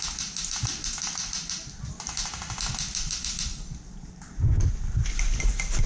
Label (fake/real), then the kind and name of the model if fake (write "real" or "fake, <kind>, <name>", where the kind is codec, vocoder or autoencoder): real